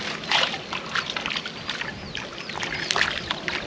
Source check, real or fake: real